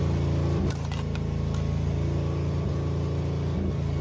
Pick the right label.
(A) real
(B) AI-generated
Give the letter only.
A